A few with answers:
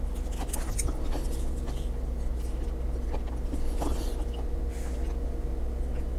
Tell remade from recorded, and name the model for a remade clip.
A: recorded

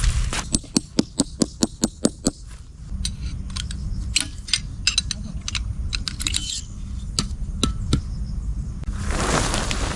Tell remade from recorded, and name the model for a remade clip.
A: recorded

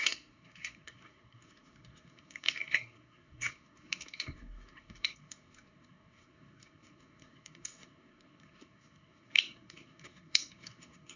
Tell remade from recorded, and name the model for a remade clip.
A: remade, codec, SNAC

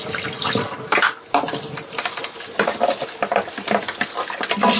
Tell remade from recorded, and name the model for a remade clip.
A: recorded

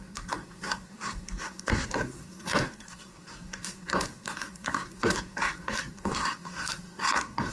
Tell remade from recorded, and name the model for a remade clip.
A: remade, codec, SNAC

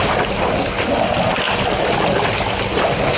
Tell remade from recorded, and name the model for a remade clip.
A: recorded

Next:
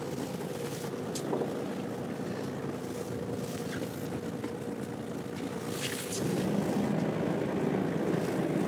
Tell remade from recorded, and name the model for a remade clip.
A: recorded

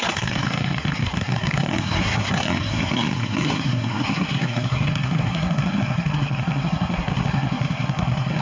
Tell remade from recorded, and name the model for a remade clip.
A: remade, codec, SNAC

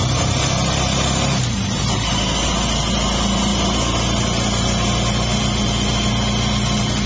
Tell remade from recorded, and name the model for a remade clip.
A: recorded